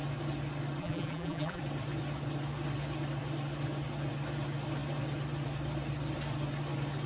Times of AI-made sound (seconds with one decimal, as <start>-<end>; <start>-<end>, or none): 0.8-1.6